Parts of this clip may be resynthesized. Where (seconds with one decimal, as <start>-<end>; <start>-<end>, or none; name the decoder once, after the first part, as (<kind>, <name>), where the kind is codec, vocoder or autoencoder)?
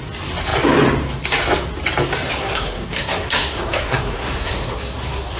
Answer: 2.4-5.4 (codec, SNAC)